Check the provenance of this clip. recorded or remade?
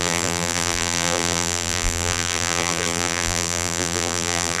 remade